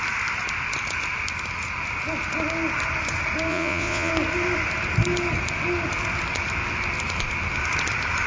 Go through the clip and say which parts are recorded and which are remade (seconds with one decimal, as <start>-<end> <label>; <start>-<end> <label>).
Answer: 0.0-3.5 recorded; 3.5-4.1 remade; 4.1-8.3 recorded